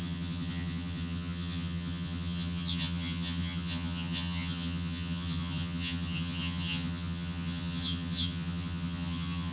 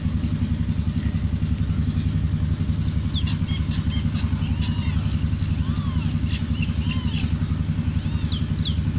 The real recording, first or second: second